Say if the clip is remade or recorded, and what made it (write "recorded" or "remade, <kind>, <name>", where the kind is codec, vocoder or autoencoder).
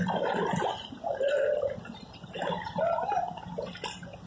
recorded